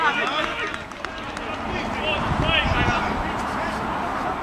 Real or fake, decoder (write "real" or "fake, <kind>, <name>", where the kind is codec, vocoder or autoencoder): real